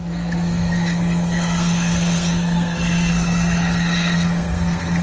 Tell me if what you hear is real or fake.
fake